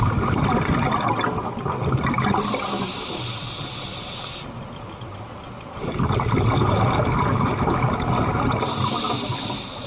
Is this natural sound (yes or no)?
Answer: yes